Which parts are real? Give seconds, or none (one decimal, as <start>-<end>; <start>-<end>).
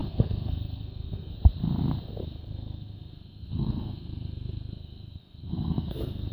1.3-2.2